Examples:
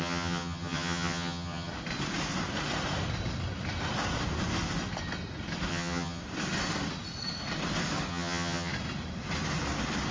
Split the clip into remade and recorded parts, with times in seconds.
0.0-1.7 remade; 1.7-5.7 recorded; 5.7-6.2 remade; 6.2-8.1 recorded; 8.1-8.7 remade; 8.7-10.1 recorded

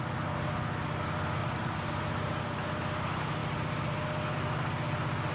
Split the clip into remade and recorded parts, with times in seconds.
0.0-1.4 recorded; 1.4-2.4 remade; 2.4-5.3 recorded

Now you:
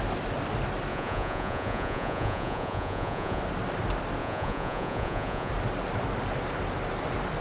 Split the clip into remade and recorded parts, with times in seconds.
0.0-0.9 recorded; 0.9-3.4 remade; 3.4-4.2 recorded; 4.2-5.5 remade; 5.5-7.4 recorded

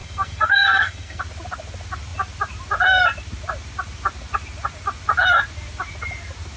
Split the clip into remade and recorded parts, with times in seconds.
0.0-1.2 remade; 1.2-6.6 recorded

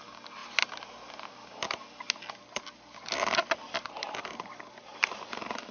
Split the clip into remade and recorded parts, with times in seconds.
0.0-4.9 recorded; 4.9-5.7 remade

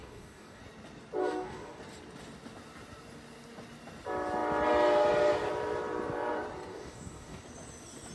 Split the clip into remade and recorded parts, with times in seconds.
0.0-0.6 remade; 0.6-1.2 recorded; 1.2-1.8 remade; 1.8-6.7 recorded; 6.7-7.4 remade; 7.4-8.1 recorded